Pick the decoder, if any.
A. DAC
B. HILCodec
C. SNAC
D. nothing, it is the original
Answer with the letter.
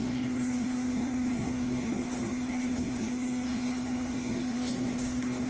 C